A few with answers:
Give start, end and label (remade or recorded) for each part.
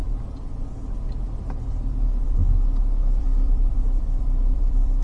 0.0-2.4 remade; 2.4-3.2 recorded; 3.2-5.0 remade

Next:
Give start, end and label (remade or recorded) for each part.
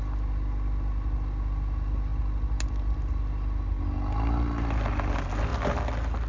0.0-6.3 recorded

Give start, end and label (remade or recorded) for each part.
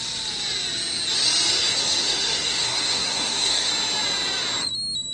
0.0-1.5 recorded; 1.5-3.7 remade; 3.7-5.1 recorded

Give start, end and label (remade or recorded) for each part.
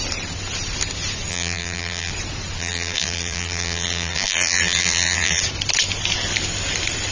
0.0-1.3 recorded; 1.3-2.1 remade; 2.1-2.6 recorded; 2.6-5.4 remade; 5.4-7.1 recorded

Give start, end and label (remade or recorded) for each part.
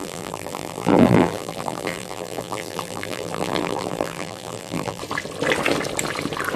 0.0-5.0 remade; 5.0-6.6 recorded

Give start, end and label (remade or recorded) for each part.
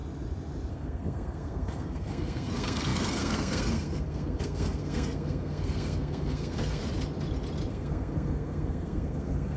0.0-0.7 recorded; 0.7-6.8 remade; 6.8-7.7 recorded; 7.7-9.6 remade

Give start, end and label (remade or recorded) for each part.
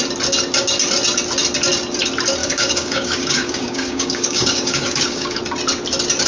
0.0-2.4 recorded; 2.4-5.4 remade; 5.4-6.3 recorded